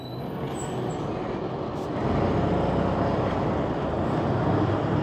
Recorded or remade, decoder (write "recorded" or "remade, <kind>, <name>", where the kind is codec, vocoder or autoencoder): recorded